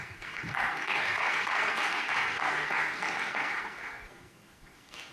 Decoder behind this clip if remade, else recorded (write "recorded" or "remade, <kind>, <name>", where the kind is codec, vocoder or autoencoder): remade, codec, SNAC